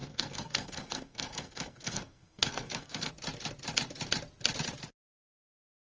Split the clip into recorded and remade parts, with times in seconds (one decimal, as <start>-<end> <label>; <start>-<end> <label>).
0.0-3.1 remade; 3.1-5.9 recorded